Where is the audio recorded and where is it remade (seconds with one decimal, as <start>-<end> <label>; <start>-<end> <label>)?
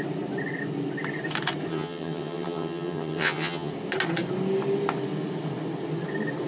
0.0-1.7 recorded; 1.7-3.7 remade; 3.7-6.5 recorded